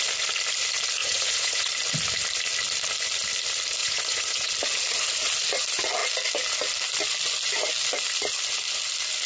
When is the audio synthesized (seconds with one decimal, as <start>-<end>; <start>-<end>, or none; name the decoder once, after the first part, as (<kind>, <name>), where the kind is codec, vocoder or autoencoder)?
1.0-1.7 (vocoder, Vocos); 3.8-4.5